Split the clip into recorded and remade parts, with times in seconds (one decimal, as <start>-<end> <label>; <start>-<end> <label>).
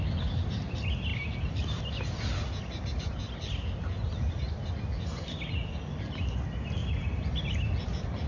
0.0-8.3 recorded